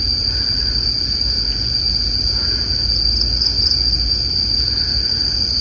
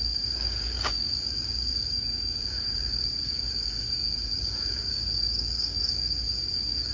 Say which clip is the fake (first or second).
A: second